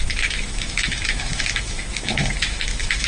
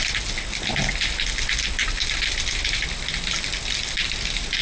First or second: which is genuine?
second